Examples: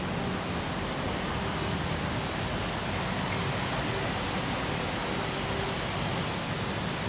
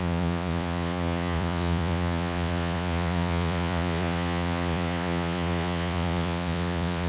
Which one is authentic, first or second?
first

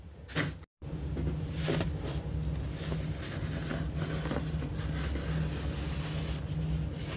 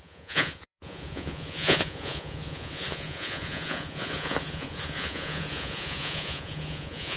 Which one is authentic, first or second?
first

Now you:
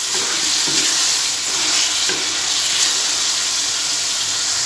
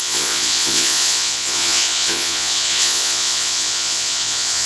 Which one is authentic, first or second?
first